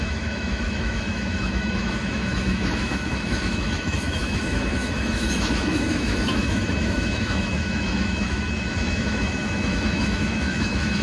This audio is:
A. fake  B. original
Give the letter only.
A